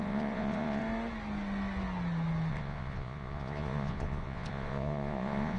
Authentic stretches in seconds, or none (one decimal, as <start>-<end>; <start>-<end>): 0.8-2.5